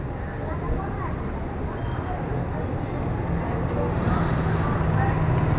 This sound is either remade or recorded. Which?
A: recorded